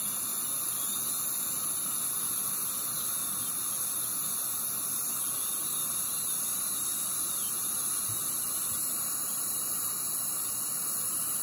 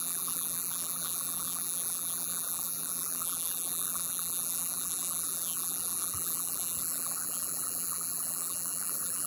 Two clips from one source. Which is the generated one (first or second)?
second